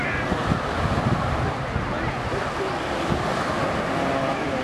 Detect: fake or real real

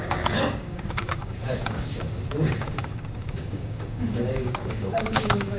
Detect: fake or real fake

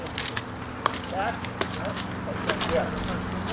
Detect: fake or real real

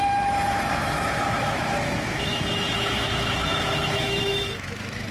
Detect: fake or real fake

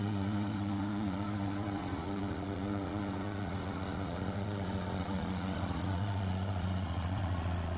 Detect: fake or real fake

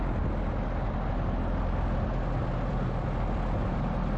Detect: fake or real real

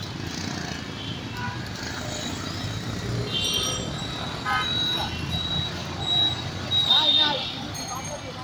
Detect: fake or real real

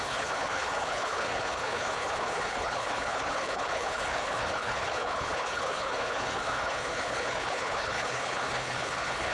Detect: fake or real fake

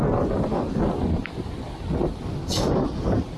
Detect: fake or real real